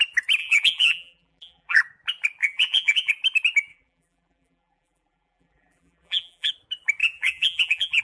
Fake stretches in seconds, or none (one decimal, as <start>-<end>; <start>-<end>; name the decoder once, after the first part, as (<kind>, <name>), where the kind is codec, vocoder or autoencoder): 0.4-1.8 (vocoder, BigVGAN v2); 2.4-3.1; 3.7-6.5; 7.0-8.0